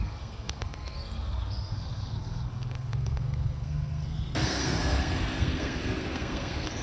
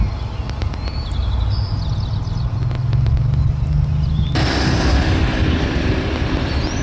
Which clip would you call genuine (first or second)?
second